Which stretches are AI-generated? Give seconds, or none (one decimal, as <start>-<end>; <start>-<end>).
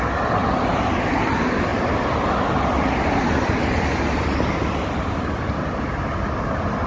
none